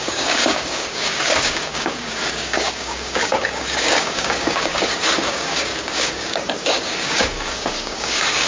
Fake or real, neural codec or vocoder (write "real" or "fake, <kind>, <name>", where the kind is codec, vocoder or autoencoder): fake, codec, DAC